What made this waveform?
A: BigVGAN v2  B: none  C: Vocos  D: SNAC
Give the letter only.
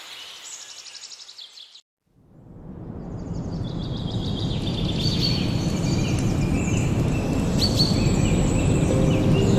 B